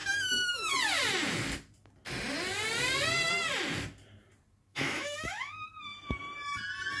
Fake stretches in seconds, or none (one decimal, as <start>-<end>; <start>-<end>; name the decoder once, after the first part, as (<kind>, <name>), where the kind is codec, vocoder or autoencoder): 0.0-0.7 (autoencoder, DAC-VAE); 4.7-5.7